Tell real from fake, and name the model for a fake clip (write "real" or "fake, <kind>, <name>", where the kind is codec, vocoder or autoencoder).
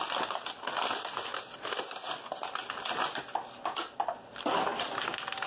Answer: real